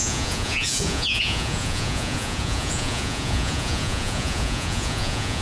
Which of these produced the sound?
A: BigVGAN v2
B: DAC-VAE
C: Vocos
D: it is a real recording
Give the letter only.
C